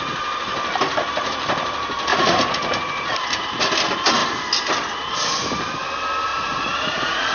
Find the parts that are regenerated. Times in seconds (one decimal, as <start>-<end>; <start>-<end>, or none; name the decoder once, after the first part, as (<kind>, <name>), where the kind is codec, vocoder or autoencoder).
2.1-3.6 (vocoder, Vocos); 6.3-7.3